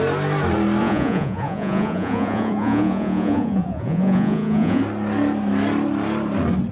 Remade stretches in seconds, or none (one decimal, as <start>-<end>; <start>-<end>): 0.8-4.8